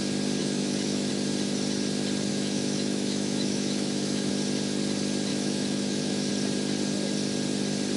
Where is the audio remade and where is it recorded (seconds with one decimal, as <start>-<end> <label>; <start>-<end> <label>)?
0.0-0.4 recorded; 0.4-1.1 remade; 1.1-2.3 recorded; 2.3-4.3 remade; 4.3-5.3 recorded; 5.3-6.3 remade; 6.3-8.0 recorded